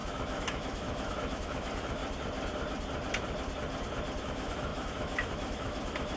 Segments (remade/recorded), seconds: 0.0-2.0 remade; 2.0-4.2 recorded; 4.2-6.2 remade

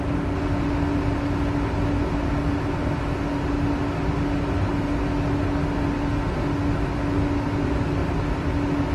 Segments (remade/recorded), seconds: 0.0-8.9 recorded

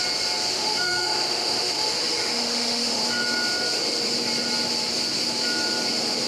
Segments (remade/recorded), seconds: 0.0-0.5 recorded; 0.5-3.0 remade; 3.0-6.3 recorded

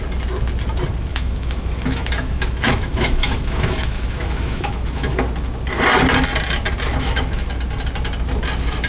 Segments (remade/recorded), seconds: 0.0-1.1 recorded; 1.1-5.2 remade; 5.2-6.8 recorded; 6.8-7.5 remade; 7.5-8.9 recorded

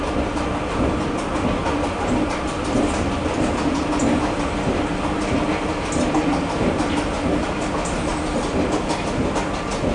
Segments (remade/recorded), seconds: 0.0-9.9 recorded

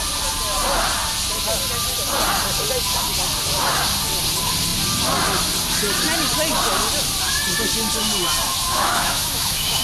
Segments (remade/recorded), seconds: 0.0-8.5 recorded; 8.5-9.8 remade

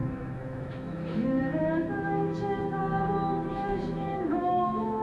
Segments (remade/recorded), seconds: 0.0-2.8 remade; 2.8-3.5 recorded; 3.5-5.0 remade